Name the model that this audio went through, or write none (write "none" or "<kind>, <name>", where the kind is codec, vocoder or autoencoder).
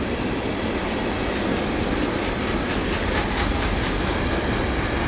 none